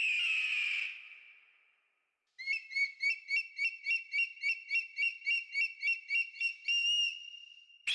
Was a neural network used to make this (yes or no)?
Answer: no